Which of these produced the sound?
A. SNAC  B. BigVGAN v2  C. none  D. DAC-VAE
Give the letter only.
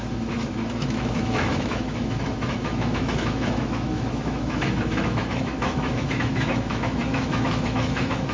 D